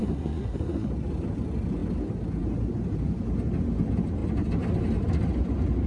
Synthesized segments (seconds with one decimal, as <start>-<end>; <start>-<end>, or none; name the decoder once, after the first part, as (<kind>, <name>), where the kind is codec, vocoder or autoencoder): 0.0-0.9 (codec, SNAC)